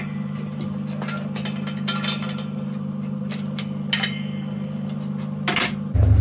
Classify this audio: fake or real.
real